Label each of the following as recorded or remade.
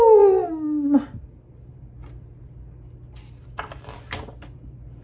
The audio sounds recorded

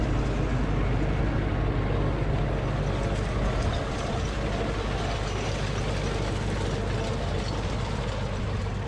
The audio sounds recorded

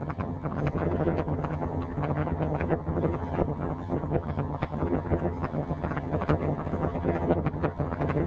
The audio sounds remade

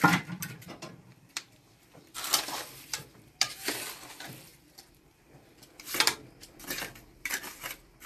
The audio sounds remade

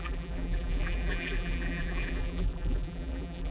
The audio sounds remade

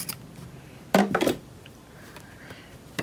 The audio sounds remade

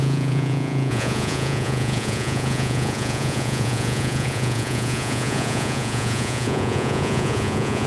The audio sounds remade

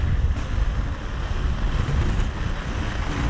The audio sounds recorded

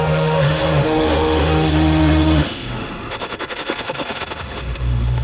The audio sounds remade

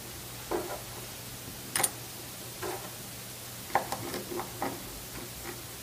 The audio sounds recorded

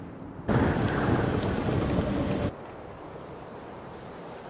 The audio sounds recorded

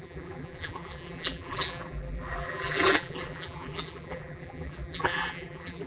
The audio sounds remade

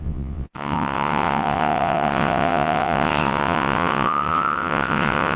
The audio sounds remade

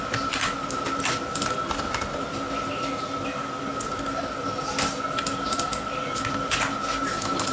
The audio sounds recorded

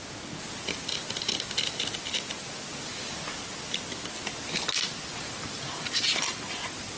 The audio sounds recorded